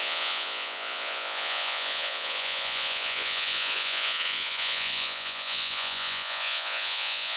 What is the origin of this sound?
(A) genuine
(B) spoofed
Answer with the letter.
B